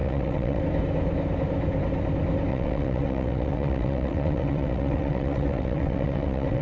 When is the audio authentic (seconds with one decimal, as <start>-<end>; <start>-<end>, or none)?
0.6-2.5